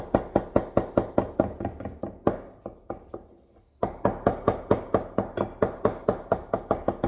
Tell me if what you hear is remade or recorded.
recorded